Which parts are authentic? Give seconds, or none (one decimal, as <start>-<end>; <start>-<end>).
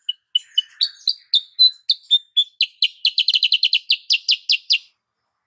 0.0-5.5